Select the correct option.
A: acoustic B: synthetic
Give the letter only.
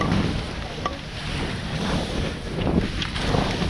A